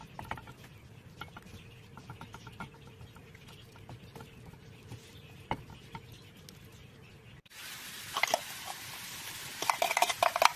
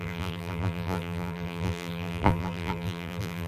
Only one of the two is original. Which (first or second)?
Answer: first